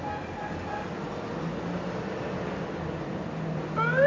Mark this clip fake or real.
real